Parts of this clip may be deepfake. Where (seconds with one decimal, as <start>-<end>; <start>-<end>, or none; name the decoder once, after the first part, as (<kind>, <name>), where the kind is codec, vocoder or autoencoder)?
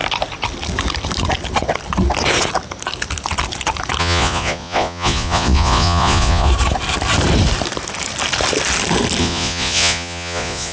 4.0-6.5 (vocoder, Vocos); 9.2-10.7